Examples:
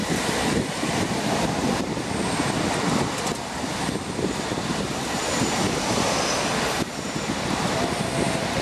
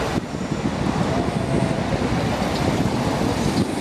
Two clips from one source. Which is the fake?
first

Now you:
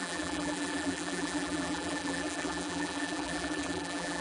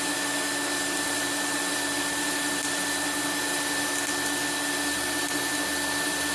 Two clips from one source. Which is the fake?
first